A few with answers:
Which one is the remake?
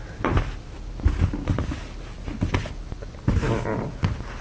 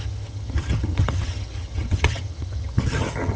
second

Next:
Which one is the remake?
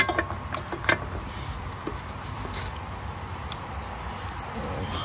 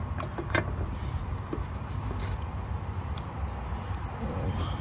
second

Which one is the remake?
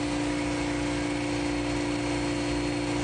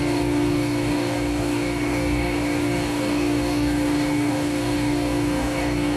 second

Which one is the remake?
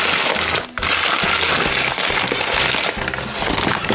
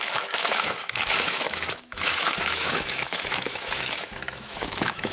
second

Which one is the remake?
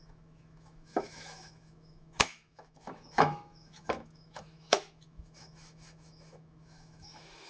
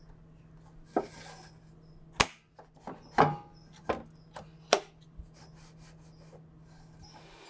first